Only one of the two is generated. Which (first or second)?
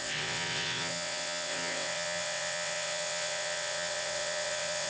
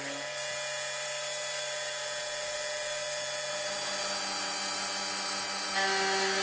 first